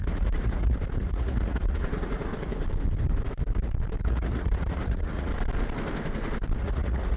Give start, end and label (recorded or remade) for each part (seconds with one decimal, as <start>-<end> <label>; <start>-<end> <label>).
0.0-2.3 remade; 2.3-4.0 recorded; 4.0-5.3 remade; 5.3-6.6 recorded; 6.6-7.2 remade